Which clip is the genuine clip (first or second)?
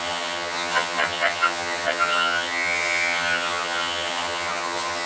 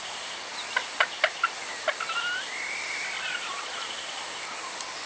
second